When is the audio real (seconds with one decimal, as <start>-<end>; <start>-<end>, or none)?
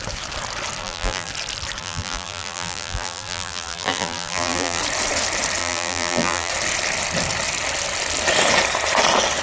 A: 0.0-0.8; 1.3-1.8; 4.8-5.6; 6.5-9.4